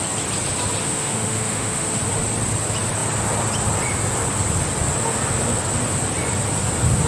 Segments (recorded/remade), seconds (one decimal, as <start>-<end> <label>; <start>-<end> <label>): 0.0-0.8 recorded; 0.8-2.0 remade; 2.0-7.1 recorded